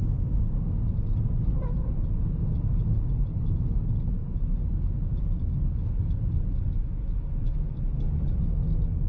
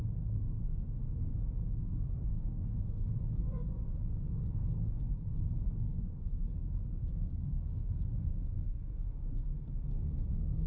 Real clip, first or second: first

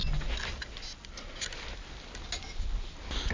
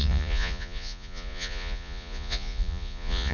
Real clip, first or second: first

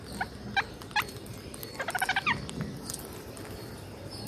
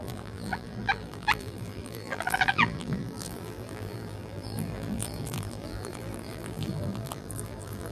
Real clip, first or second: first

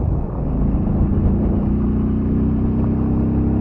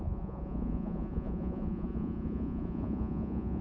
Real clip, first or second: first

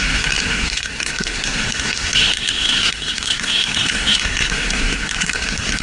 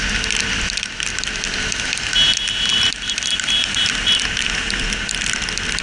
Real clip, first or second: second